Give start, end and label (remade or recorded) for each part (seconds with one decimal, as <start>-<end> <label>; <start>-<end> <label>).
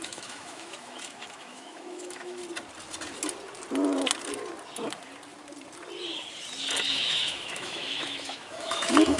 0.0-2.4 remade; 2.4-6.9 recorded; 6.9-9.2 remade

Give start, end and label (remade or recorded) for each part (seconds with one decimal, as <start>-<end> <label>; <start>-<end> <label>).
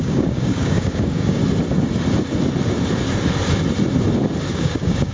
0.0-1.4 remade; 1.4-4.5 recorded; 4.5-5.1 remade